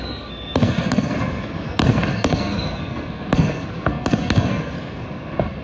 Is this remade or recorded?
remade